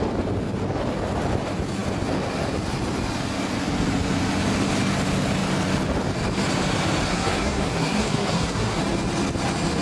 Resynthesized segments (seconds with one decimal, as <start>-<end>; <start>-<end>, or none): 7.1-8.8